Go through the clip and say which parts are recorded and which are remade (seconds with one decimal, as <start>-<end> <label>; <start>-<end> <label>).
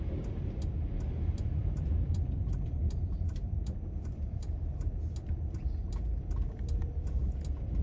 0.0-1.6 recorded; 1.6-4.9 remade; 4.9-7.8 recorded